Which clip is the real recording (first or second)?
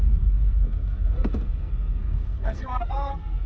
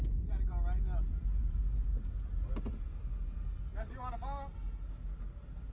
second